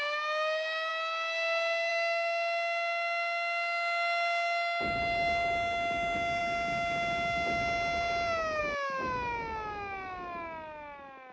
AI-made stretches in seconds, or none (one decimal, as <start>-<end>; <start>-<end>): none